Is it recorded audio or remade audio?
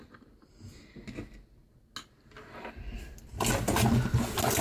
recorded